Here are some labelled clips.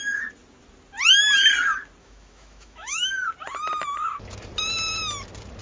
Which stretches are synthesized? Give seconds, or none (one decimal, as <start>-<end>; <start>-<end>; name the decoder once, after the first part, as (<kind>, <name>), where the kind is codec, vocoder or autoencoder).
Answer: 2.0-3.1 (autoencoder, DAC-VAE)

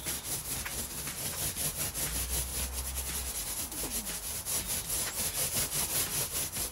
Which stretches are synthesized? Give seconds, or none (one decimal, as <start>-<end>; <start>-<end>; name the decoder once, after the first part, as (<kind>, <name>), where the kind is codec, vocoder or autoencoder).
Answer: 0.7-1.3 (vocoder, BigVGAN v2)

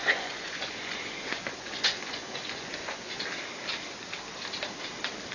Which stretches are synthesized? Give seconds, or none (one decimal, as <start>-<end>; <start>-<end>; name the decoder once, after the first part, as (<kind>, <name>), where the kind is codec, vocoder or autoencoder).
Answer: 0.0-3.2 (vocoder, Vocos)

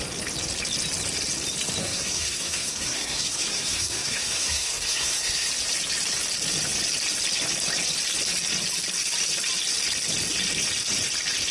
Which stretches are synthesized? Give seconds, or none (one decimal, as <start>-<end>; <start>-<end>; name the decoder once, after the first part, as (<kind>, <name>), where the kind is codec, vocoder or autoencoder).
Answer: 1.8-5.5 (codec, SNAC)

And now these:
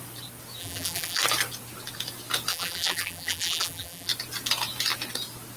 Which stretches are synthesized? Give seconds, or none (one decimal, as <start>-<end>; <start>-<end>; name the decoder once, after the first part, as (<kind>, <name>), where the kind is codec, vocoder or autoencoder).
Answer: 0.6-1.2 (vocoder, BigVGAN v2); 2.5-4.1